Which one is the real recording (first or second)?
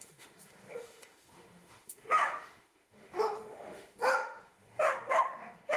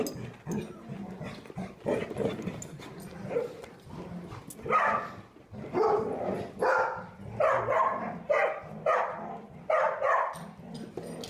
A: second